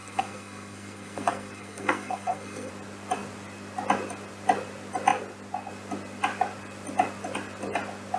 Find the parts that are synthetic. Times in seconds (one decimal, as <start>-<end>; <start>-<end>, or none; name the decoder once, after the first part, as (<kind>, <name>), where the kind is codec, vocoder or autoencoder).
0.0-2.7 (codec, SNAC)